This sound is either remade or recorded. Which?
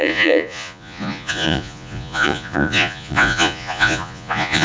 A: remade